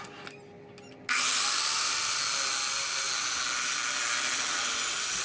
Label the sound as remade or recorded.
recorded